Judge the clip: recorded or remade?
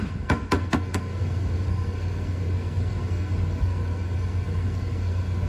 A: remade